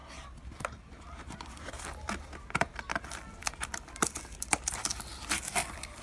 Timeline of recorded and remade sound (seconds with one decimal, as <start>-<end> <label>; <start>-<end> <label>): 0.0-6.0 recorded